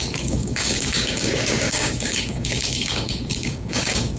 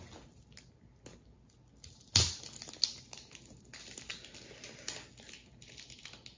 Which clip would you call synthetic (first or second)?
first